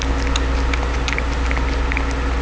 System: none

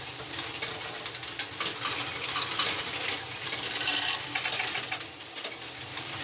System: none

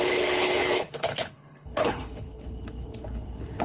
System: codec, HILCodec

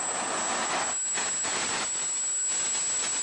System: none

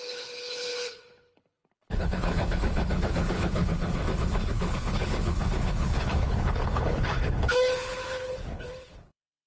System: codec, HILCodec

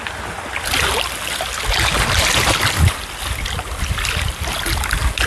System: none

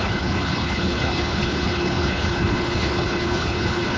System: codec, HILCodec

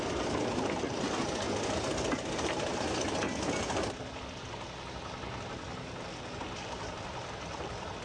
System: none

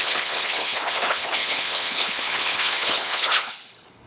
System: codec, HILCodec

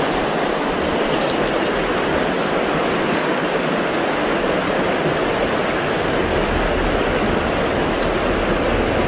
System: none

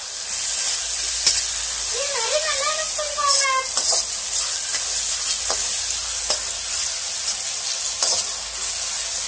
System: none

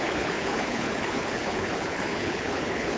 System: codec, HILCodec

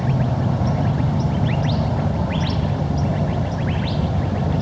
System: none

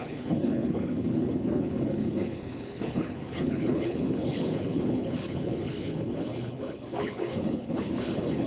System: codec, HILCodec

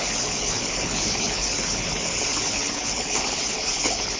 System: codec, HILCodec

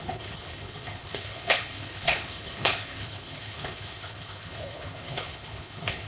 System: codec, HILCodec